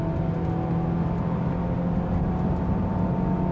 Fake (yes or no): no